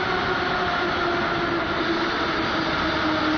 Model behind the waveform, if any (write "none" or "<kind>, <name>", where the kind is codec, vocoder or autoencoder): none